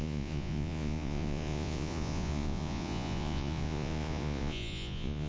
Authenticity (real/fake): fake